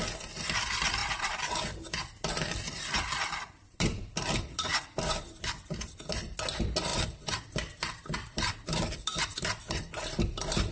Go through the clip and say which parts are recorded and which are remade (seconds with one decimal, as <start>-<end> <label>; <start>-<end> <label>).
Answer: 0.0-1.0 recorded; 1.0-1.5 remade; 1.5-2.0 recorded; 2.0-5.1 remade; 5.1-6.9 recorded; 6.9-10.7 remade